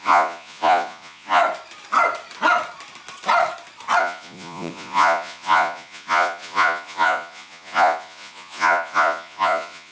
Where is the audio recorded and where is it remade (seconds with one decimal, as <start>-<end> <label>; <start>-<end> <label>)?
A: 0.0-1.4 remade; 1.4-4.0 recorded; 4.0-9.9 remade